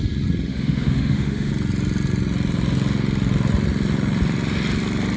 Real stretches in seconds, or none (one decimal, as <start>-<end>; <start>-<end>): 0.0-0.5; 1.5-5.2